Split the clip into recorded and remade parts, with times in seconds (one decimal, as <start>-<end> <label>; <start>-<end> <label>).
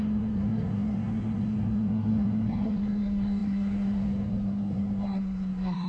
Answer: 0.0-5.9 remade